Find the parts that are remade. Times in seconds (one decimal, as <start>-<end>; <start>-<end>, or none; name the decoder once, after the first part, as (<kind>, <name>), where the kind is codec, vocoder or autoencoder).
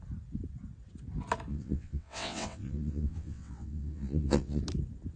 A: 1.5-4.6 (vocoder, WaveNeXt)